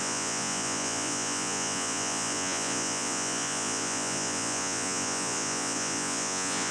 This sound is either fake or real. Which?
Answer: fake